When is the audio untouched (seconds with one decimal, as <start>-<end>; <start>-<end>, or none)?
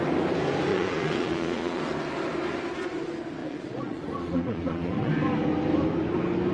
0.0-0.7; 1.8-3.4; 5.1-6.5